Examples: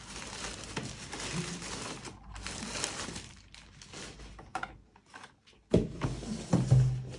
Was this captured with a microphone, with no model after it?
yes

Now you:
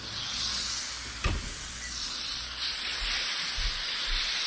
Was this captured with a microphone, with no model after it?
yes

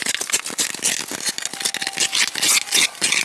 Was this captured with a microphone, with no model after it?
yes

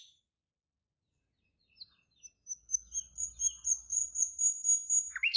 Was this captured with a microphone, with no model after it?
yes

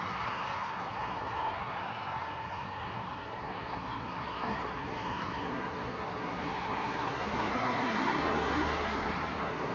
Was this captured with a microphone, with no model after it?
no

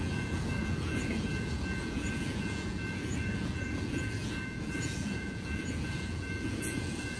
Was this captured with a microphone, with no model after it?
no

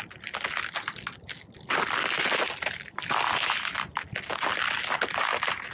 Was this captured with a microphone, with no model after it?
yes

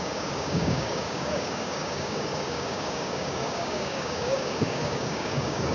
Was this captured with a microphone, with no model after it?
no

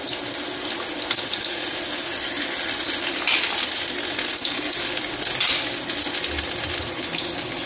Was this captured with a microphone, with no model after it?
yes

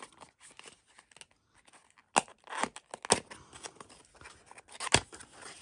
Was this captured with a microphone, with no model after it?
yes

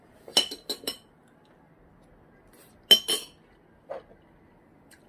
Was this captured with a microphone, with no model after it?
yes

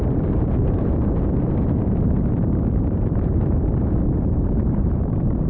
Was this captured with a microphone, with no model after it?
no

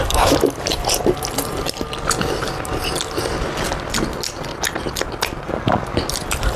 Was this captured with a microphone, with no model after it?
yes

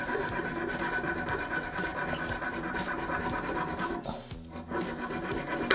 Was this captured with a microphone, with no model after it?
yes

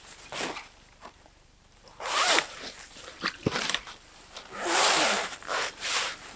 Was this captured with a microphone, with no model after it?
no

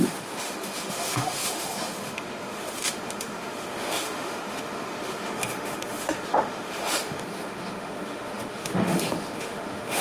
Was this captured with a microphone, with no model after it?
no